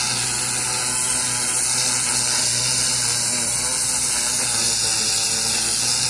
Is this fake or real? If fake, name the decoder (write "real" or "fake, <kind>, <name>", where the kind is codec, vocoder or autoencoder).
real